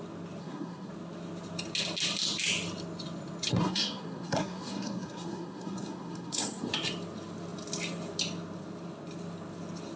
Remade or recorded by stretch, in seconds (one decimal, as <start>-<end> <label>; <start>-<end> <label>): 0.0-0.4 recorded; 0.4-0.9 remade; 0.9-3.5 recorded; 3.5-6.7 remade; 6.7-10.0 recorded